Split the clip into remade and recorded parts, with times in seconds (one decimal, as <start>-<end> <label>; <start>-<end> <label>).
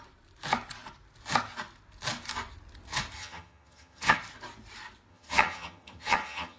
0.0-3.2 recorded; 3.2-4.2 remade; 4.2-5.1 recorded; 5.1-6.6 remade